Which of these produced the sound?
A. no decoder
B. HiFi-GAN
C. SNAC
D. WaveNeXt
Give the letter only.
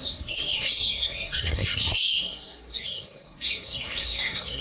C